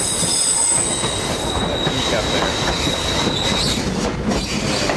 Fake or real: real